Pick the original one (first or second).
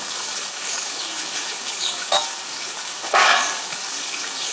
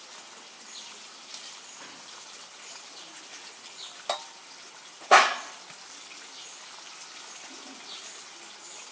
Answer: second